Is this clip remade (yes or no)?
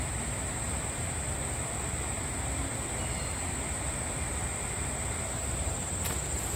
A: no